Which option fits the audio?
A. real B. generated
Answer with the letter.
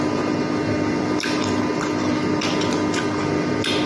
A